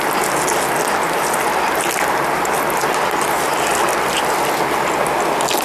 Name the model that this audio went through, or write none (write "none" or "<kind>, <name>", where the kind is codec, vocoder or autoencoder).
none